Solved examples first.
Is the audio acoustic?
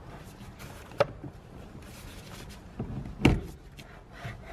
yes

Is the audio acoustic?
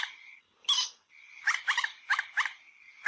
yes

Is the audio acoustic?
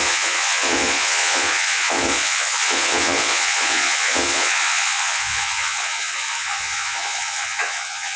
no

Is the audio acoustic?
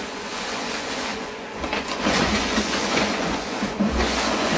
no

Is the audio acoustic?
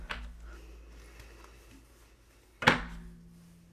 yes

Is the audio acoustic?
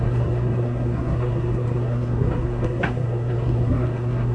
no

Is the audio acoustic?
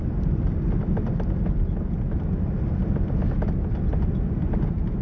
yes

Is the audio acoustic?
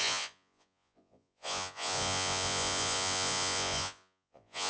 no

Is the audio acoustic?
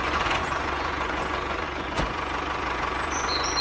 no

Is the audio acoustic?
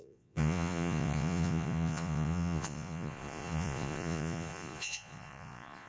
no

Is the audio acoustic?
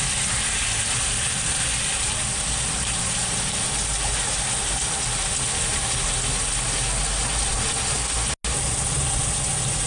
yes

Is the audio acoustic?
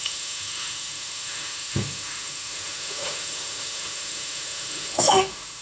no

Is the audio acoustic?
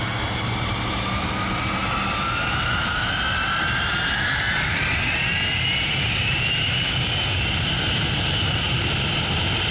yes